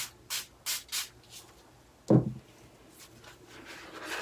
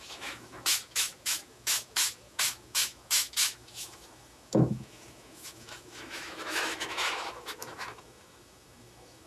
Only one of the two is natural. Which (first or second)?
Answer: first